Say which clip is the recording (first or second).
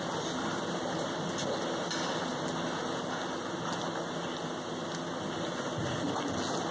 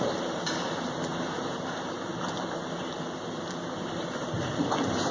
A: first